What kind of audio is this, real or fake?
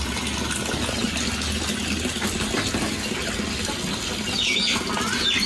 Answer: real